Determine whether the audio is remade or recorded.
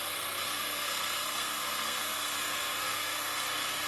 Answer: remade